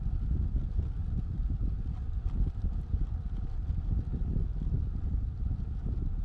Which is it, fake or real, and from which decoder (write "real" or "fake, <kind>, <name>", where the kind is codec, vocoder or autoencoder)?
real